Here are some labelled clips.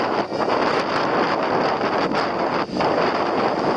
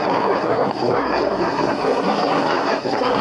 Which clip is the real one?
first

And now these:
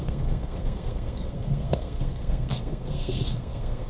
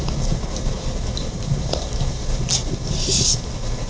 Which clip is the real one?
second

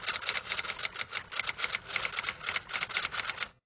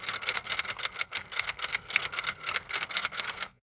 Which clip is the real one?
first